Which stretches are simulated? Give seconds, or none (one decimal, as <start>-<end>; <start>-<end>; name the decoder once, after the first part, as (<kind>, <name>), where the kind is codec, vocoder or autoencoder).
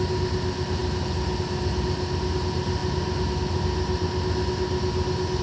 none